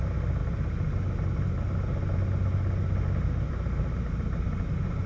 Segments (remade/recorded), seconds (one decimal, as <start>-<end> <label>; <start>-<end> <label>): 0.0-5.1 recorded

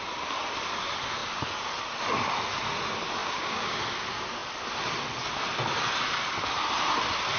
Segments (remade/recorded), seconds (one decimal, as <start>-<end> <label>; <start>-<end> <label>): 0.0-3.2 recorded; 3.2-3.8 remade; 3.8-7.4 recorded

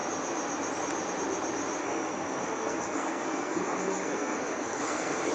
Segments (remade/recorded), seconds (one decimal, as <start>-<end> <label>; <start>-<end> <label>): 0.0-1.8 recorded; 1.8-5.3 remade

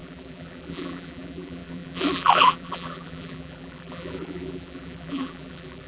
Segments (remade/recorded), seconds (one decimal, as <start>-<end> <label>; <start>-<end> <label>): 0.0-5.9 remade